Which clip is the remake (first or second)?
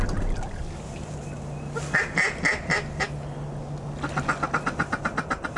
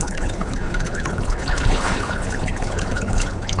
second